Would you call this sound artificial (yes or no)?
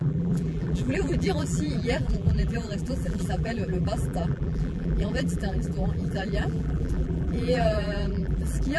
yes